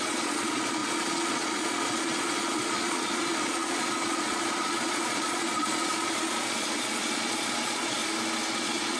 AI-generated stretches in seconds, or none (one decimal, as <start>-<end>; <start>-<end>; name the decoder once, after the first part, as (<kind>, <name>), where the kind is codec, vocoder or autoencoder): 0.0-8.0 (vocoder, Vocos); 8.5-9.0